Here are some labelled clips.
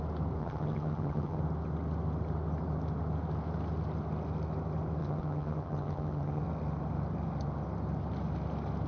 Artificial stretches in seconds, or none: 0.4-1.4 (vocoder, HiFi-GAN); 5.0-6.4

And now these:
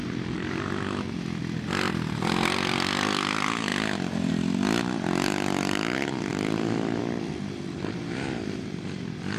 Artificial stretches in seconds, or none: none

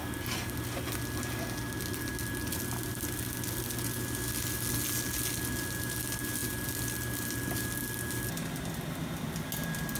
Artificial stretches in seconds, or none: none

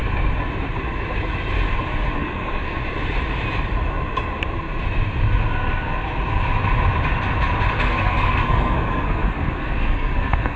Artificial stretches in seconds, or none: 2.2-2.8 (codec, SNAC); 7.8-10.6

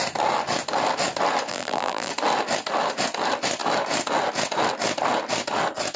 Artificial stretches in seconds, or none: 1.5-2.1 (vocoder, BigVGAN v2)

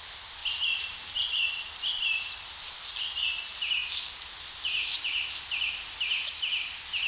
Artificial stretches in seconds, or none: 0.4-2.6 (vocoder, BigVGAN v2)

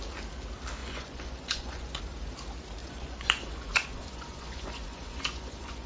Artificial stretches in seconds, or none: 0.8-2.0 (vocoder, Vocos); 2.8-5.9